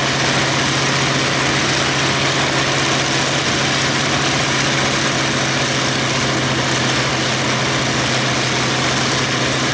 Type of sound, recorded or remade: recorded